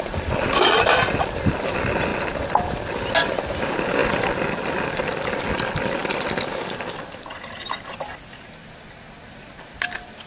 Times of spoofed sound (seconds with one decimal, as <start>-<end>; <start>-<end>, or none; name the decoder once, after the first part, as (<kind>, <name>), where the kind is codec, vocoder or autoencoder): none